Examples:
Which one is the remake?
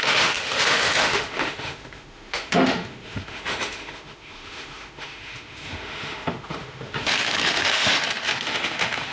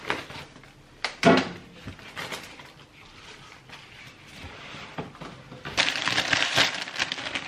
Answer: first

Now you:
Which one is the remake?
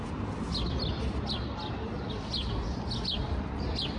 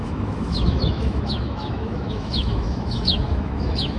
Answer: second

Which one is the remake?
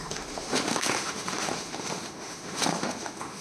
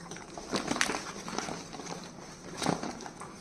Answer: first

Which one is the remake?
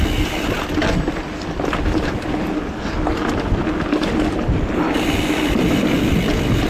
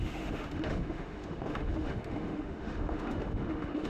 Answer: second